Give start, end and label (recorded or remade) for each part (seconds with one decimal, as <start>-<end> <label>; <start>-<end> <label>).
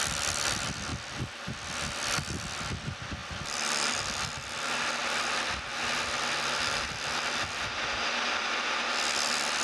0.0-9.6 recorded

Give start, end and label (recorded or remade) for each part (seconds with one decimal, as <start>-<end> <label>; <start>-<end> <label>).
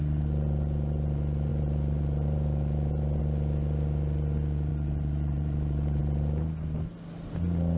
0.0-1.5 recorded; 1.5-3.2 remade; 3.2-4.7 recorded; 4.7-6.0 remade; 6.0-7.8 recorded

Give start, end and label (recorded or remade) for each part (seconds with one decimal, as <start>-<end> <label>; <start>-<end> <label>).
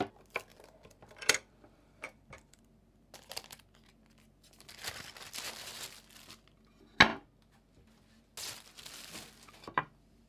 0.0-0.5 recorded; 0.5-2.6 remade; 2.6-10.3 recorded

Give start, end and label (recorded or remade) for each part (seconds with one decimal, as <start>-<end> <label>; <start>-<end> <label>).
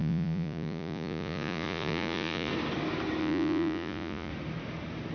0.0-2.5 remade; 2.5-3.2 recorded; 3.2-4.3 remade; 4.3-5.1 recorded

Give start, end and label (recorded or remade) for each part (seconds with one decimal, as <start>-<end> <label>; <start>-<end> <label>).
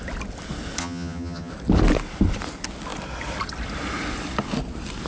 0.0-0.8 recorded; 0.8-1.5 remade; 1.5-5.1 recorded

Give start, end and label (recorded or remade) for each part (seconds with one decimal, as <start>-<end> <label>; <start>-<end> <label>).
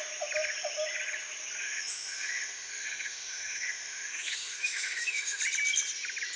0.0-1.6 recorded; 1.6-5.4 remade; 5.4-6.4 recorded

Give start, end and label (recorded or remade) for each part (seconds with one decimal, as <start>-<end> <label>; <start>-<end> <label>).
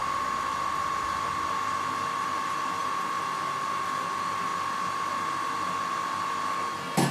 0.0-7.1 recorded